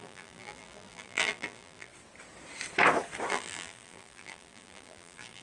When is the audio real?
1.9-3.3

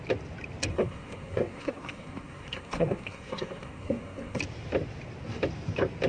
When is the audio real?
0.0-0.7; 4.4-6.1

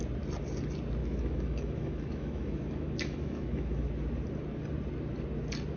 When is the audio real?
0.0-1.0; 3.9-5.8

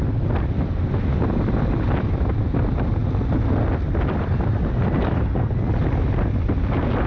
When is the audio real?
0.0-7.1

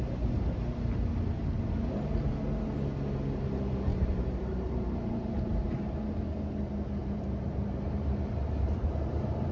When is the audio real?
0.0-3.9; 5.9-7.0

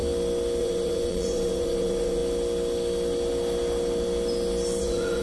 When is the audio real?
0.0-0.6; 2.2-4.8

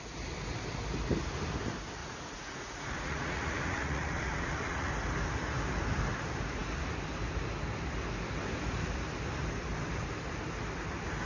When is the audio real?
0.0-2.0; 4.9-11.3

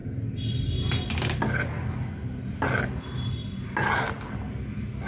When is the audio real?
0.0-5.1